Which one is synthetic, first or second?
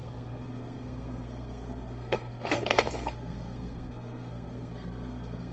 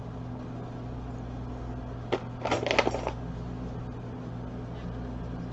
first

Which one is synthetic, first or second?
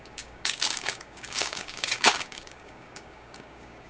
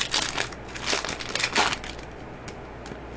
first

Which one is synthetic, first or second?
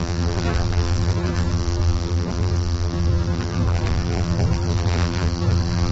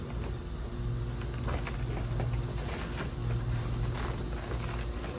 first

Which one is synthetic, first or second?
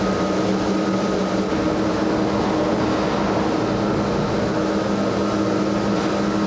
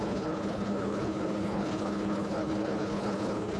second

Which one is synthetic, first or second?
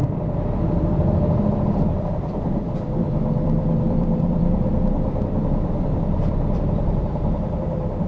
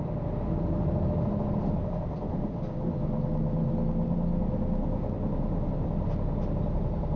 first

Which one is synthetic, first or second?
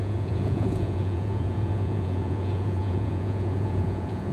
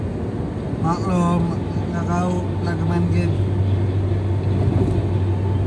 first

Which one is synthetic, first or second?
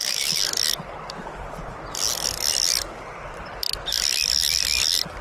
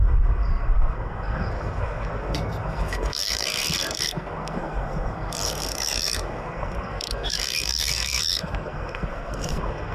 second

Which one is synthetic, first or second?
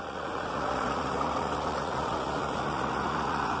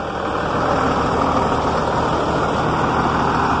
first